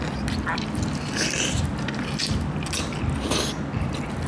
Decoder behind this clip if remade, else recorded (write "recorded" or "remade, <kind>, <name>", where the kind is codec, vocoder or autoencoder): recorded